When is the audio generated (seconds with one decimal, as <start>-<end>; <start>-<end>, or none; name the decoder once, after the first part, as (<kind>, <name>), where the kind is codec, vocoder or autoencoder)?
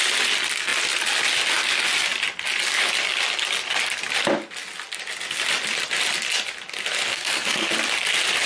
7.1-7.7 (codec, SNAC)